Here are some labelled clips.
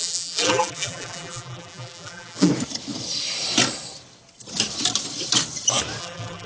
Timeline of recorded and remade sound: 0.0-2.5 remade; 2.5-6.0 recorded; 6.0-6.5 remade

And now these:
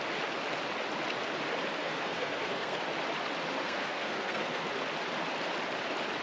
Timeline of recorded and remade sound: 0.0-1.8 recorded; 1.8-2.8 remade; 2.8-3.6 recorded; 3.6-4.7 remade; 4.7-6.2 recorded